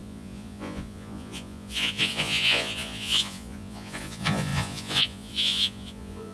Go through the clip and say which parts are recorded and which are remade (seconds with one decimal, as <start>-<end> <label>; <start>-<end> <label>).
0.0-6.3 remade